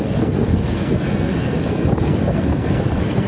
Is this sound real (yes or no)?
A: no